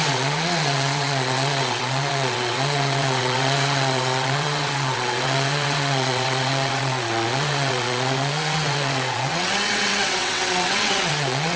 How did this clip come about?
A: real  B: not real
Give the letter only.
B